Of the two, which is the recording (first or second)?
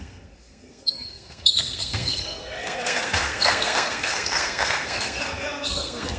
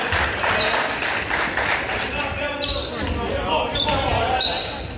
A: second